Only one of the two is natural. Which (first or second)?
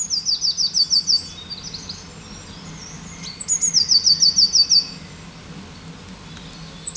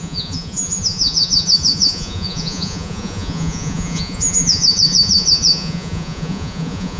first